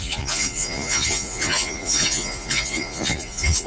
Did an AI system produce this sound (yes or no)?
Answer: yes